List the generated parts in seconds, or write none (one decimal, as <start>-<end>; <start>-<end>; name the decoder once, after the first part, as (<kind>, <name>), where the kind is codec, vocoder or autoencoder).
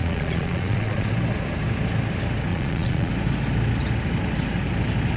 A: 0.0-1.1 (vocoder, Vocos); 2.5-3.1